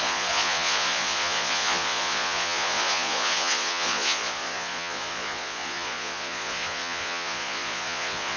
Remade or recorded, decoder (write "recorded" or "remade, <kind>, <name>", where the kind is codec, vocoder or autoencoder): remade, vocoder, Vocos